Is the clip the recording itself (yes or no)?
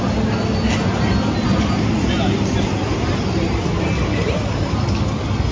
yes